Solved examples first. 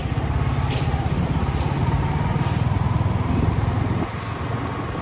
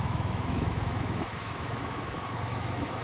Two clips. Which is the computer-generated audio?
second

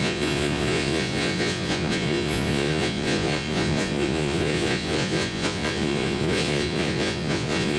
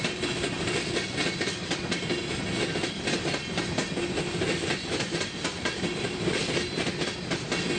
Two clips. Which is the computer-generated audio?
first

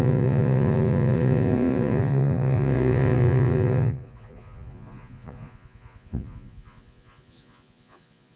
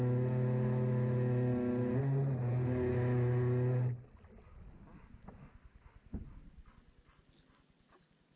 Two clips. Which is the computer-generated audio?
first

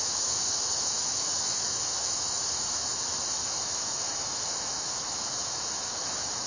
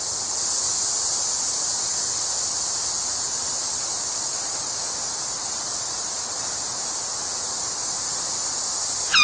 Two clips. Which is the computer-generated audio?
first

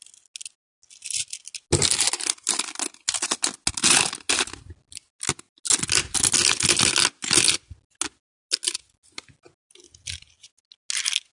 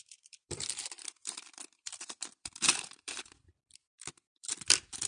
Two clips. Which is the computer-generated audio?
second